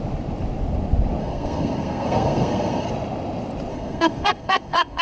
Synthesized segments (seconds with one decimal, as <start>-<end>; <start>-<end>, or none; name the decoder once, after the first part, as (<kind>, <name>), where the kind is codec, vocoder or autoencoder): 1.2-2.9 (codec, SNAC); 3.7-5.0